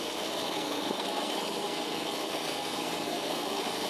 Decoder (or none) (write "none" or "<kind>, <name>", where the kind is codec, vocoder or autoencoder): codec, SNAC